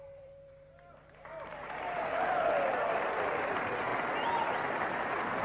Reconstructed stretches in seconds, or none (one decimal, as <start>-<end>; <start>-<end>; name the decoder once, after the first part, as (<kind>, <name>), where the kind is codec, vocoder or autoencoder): 0.0-3.9 (vocoder, BigVGAN v2); 4.8-5.4